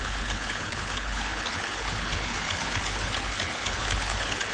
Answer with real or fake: fake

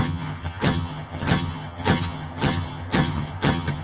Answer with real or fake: fake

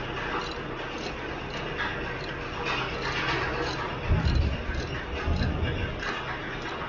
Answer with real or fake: real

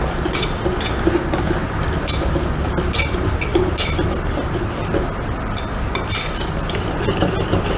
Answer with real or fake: fake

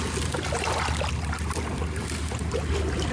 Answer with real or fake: real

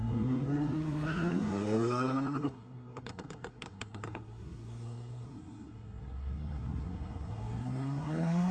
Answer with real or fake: fake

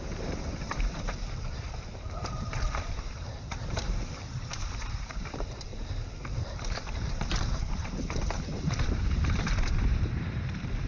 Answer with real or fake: fake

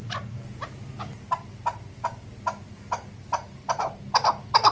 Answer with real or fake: real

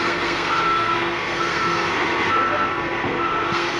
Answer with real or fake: fake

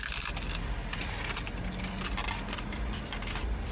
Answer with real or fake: real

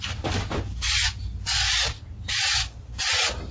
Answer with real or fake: real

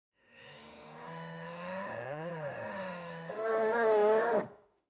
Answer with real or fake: fake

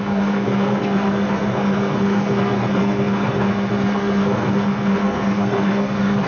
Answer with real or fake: fake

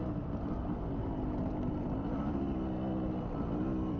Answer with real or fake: real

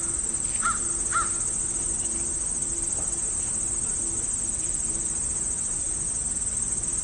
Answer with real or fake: real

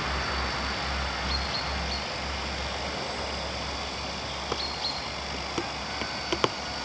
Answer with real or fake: real